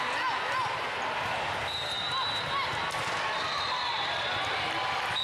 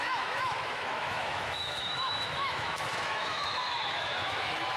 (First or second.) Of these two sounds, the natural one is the first